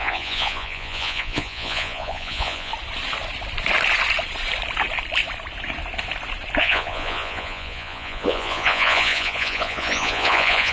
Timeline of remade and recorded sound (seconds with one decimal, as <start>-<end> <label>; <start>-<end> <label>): 0.0-2.7 remade; 2.7-6.6 recorded; 6.6-10.7 remade